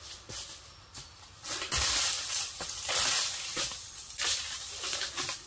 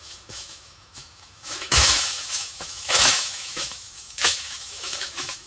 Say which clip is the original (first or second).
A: first